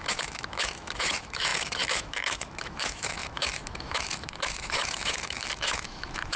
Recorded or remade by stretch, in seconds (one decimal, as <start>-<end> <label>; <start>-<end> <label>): 0.0-6.4 remade